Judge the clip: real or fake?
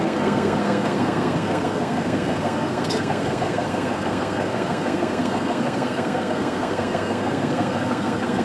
fake